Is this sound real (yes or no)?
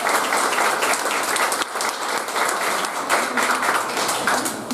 yes